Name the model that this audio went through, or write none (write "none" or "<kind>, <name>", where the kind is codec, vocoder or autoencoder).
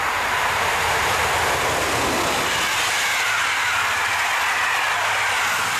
none